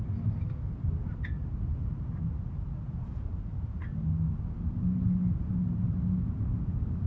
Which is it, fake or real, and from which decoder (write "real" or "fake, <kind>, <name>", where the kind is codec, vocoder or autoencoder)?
real